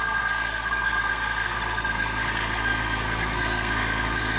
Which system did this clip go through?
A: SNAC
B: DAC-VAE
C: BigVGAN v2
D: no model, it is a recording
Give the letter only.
A